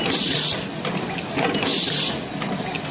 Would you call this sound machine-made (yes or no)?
no